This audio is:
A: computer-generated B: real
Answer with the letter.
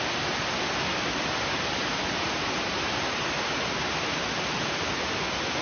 B